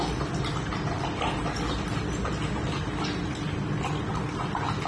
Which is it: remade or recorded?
recorded